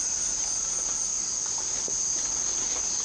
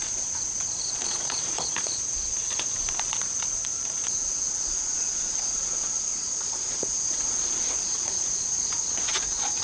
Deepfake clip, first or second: second